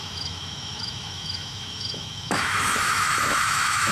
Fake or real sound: fake